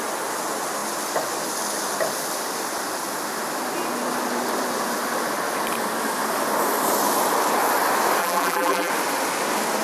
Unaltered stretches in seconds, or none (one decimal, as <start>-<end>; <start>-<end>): 0.0-8.2; 8.9-9.8